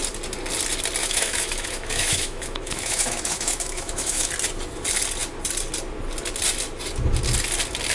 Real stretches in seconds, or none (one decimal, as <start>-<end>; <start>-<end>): 0.0-1.0; 4.3-7.9